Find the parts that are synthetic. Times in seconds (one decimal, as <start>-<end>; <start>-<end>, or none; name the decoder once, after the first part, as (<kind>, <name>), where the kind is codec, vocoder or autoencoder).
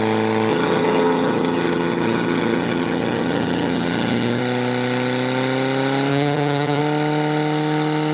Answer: 0.5-4.4 (vocoder, HiFi-GAN); 6.1-6.8